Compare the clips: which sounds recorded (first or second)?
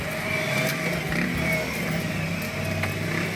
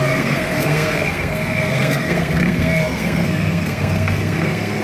first